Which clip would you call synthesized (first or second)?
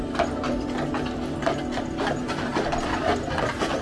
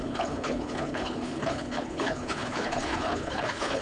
second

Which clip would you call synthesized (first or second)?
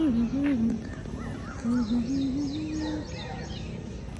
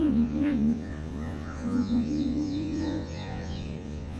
second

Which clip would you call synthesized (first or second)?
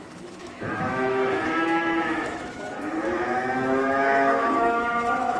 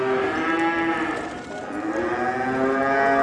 first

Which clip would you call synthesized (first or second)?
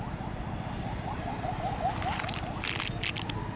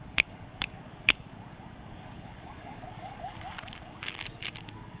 second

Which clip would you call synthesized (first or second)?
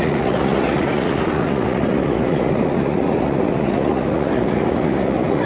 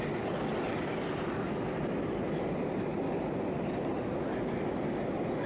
first